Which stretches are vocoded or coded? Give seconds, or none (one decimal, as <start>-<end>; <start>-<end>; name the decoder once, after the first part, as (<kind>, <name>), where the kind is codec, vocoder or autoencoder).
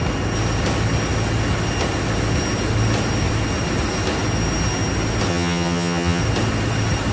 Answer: 5.3-6.2 (vocoder, HiFi-GAN)